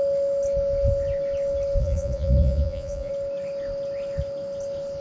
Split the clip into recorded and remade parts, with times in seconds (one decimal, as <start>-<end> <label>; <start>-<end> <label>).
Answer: 0.0-1.8 recorded; 1.8-3.1 remade; 3.1-5.0 recorded

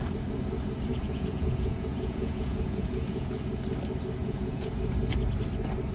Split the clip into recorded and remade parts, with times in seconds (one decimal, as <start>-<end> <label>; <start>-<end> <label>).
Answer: 0.0-0.9 recorded; 0.9-3.4 remade; 3.4-4.2 recorded; 4.2-4.7 remade; 4.7-5.9 recorded

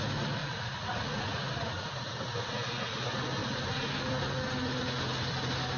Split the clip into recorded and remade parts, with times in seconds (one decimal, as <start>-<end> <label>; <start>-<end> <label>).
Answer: 0.0-0.4 recorded; 0.4-2.0 remade; 2.0-5.8 recorded

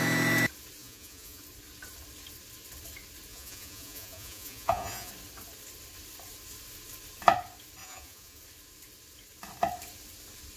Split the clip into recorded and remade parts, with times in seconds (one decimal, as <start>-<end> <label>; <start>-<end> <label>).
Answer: 0.0-0.8 recorded; 0.8-1.4 remade; 1.4-3.3 recorded; 3.3-5.1 remade; 5.1-7.8 recorded; 7.8-8.4 remade; 8.4-10.6 recorded

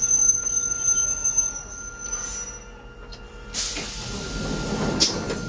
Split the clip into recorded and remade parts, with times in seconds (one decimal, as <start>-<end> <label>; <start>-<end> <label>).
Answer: 0.0-5.5 recorded

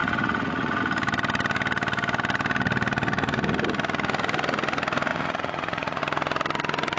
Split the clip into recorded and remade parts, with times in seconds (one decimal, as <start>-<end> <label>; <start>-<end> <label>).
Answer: 0.0-0.8 remade; 0.8-5.1 recorded; 5.1-6.0 remade; 6.0-7.0 recorded